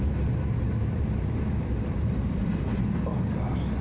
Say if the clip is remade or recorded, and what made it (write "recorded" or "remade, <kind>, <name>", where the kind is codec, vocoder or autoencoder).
recorded